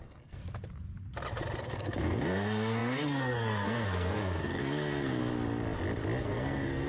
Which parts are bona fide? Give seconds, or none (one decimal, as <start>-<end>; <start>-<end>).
0.4-1.6; 5.2-6.2